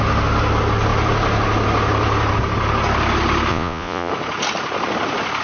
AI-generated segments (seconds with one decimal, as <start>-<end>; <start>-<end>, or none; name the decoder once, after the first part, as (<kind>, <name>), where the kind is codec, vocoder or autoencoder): 3.5-4.1 (vocoder, Vocos)